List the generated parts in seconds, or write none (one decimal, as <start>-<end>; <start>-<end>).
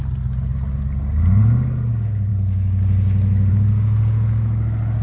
none